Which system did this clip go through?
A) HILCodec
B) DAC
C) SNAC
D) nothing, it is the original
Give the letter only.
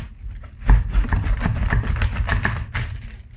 D